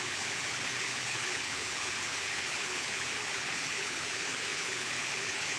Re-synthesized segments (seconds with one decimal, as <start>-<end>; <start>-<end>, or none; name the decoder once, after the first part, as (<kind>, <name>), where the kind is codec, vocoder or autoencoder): 0.0-5.6 (codec, HILCodec)